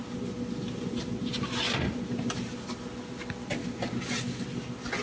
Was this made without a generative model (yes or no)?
yes